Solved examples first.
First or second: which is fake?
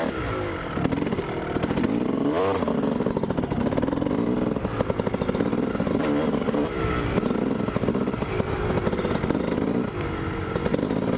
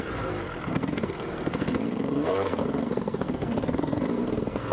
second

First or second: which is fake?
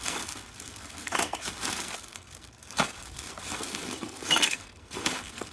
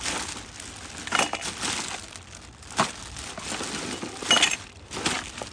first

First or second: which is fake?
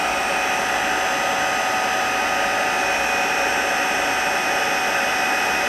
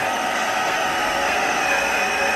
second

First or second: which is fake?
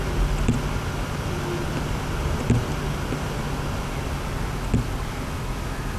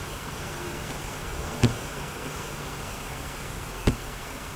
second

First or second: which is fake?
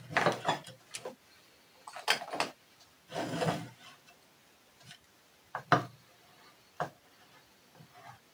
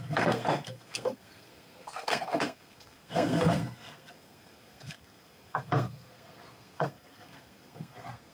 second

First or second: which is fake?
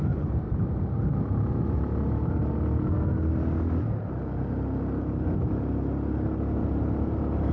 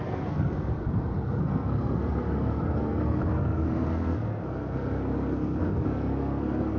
second